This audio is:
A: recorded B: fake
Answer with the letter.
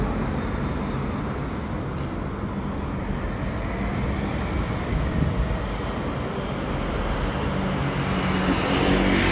A